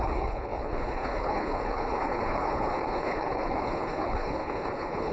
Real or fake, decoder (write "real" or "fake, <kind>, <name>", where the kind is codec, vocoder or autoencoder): fake, codec, HILCodec